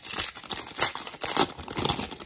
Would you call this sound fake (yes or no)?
no